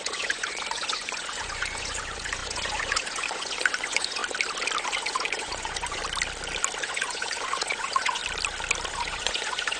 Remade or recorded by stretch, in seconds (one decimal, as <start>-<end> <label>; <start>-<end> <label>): 0.0-4.2 remade; 4.2-4.8 recorded; 4.8-6.0 remade; 6.0-6.8 recorded; 6.8-8.2 remade; 8.2-8.9 recorded; 8.9-9.8 remade